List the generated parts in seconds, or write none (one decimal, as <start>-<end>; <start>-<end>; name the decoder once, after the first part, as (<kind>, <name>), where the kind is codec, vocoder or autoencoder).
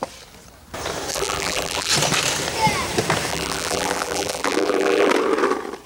1.1-1.9 (vocoder, BigVGAN v2); 3.3-5.1